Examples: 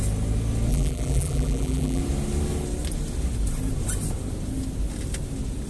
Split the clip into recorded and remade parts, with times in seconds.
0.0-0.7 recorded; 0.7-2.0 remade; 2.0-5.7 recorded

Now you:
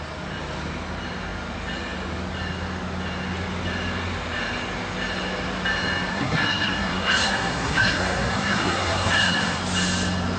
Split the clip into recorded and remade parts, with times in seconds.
0.0-6.1 recorded; 6.1-9.6 remade; 9.6-10.4 recorded

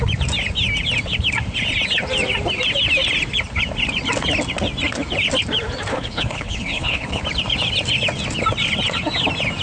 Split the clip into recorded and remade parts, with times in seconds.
0.0-5.9 recorded; 5.9-7.2 remade; 7.2-9.6 recorded

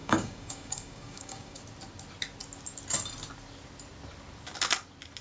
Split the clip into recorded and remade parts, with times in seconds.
0.0-1.6 remade; 1.6-5.2 recorded

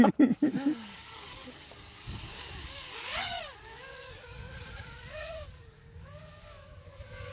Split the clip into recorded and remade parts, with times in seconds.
0.0-3.1 remade; 3.1-3.6 recorded; 3.6-7.3 remade

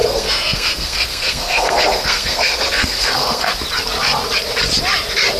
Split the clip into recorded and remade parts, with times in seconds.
0.0-3.5 remade; 3.5-5.4 recorded